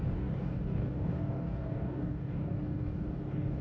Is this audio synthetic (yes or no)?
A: yes